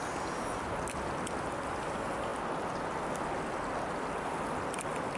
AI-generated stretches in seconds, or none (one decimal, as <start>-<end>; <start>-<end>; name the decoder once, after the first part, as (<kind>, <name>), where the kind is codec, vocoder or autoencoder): none